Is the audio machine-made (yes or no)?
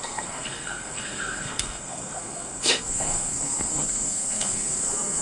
yes